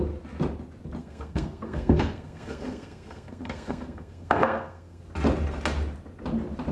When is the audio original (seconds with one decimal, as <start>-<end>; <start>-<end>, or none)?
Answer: 0.0-1.0; 5.0-6.7